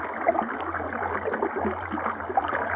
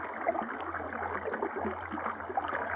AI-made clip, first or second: first